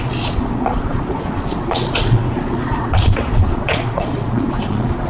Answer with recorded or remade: remade